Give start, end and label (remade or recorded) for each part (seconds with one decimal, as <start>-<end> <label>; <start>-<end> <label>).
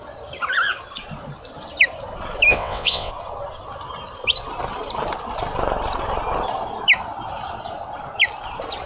0.0-2.5 recorded; 2.5-3.1 remade; 3.1-8.9 recorded